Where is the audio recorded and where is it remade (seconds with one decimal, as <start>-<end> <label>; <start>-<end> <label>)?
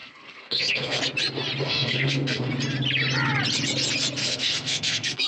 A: 0.0-1.0 remade; 1.0-1.6 recorded; 1.6-2.5 remade; 2.5-4.2 recorded; 4.2-5.3 remade